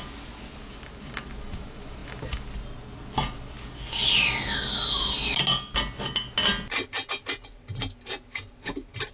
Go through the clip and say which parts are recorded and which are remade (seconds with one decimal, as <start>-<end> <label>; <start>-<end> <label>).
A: 0.0-9.1 recorded